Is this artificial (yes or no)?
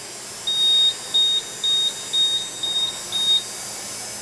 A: no